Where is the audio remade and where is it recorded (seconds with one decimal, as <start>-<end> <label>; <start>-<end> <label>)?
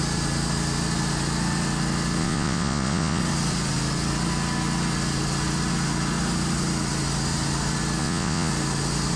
0.0-2.2 recorded; 2.2-3.2 remade; 3.2-8.0 recorded; 8.0-8.5 remade; 8.5-9.2 recorded